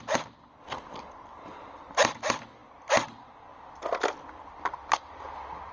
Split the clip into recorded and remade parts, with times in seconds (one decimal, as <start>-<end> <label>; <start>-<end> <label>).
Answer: 0.0-5.7 recorded